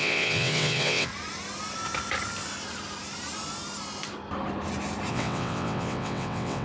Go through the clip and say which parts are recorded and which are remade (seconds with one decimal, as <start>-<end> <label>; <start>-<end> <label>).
0.0-1.1 remade; 1.1-5.1 recorded; 5.1-6.6 remade

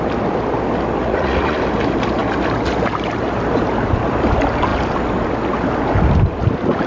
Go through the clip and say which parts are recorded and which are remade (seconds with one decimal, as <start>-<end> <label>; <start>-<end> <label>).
0.0-1.0 recorded; 1.0-1.6 remade; 1.6-6.9 recorded